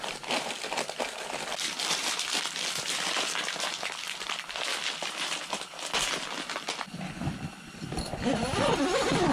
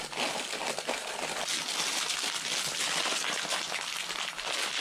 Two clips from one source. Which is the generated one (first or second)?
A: first